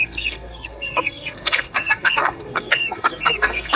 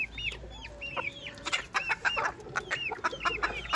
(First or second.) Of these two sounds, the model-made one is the first